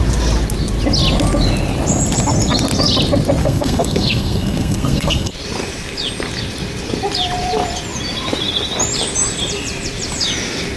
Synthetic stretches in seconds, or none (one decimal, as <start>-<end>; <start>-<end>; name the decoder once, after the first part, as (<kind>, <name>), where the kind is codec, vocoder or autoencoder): 3.4-5.3 (codec, SNAC)